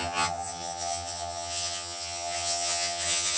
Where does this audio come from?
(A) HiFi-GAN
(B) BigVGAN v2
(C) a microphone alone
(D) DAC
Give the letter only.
A